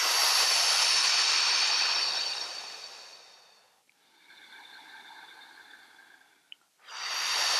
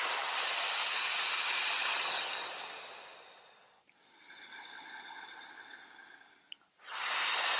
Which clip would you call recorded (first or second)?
second